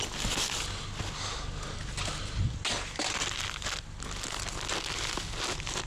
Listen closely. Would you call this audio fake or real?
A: real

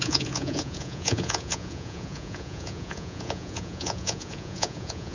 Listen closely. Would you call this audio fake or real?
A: fake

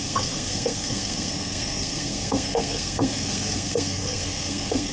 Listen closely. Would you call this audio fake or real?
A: fake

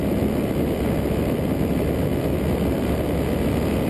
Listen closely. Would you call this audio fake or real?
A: fake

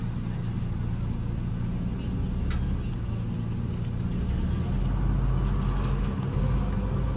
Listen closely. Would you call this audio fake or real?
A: real